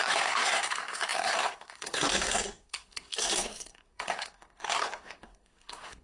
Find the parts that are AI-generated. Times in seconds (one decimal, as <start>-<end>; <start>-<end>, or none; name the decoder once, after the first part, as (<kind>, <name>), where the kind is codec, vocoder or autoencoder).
0.0-6.0 (codec, SNAC)